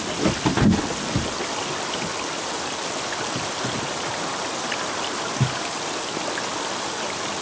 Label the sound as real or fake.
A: real